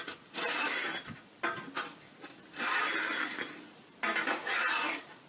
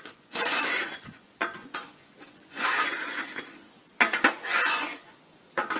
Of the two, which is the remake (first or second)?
second